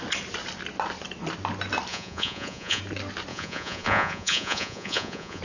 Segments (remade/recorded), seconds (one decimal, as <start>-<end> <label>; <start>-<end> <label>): 0.0-1.9 recorded; 1.9-2.8 remade; 2.8-3.3 recorded; 3.3-5.4 remade